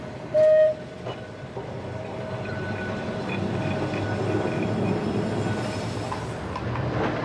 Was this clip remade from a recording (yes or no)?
no